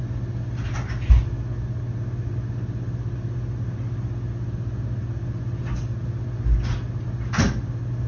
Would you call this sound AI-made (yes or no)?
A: no